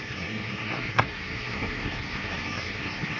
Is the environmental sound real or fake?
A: fake